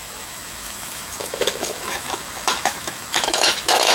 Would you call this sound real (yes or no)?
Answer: no